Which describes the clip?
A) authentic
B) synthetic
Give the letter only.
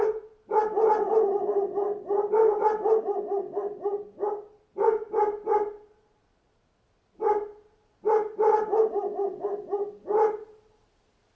A